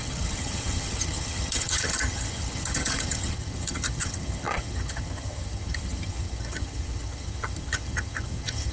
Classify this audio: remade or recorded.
remade